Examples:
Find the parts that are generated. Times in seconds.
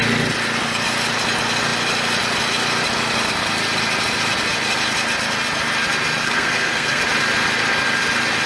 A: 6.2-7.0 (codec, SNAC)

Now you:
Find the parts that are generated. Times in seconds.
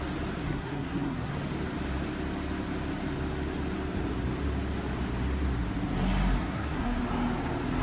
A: 0.4-1.3 (codec, SNAC); 6.4-7.0